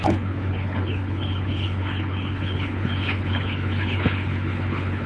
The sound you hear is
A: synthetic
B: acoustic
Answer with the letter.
A